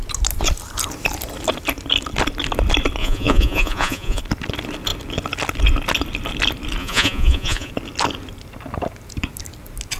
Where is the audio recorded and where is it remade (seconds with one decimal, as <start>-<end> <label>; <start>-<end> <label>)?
0.0-3.0 recorded; 3.0-4.2 remade; 4.2-6.8 recorded; 6.8-7.7 remade; 7.7-10.0 recorded

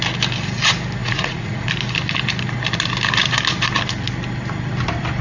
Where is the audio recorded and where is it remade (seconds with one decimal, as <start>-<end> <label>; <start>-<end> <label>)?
0.0-1.0 recorded; 1.0-1.7 remade; 1.7-5.2 recorded

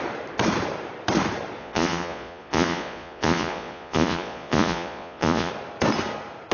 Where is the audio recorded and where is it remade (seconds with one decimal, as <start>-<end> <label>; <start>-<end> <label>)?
0.0-1.6 recorded; 1.6-5.5 remade; 5.5-6.5 recorded